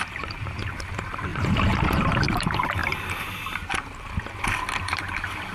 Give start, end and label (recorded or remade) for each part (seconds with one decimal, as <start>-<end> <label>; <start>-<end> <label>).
0.0-2.8 remade; 2.8-4.8 recorded; 4.8-5.5 remade

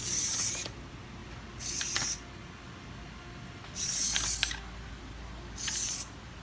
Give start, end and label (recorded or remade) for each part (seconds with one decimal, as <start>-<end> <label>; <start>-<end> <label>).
0.0-6.4 recorded

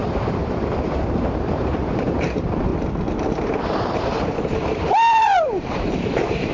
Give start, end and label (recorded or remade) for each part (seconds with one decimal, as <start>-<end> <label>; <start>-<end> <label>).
0.0-2.7 remade; 2.7-3.3 recorded; 3.3-6.5 remade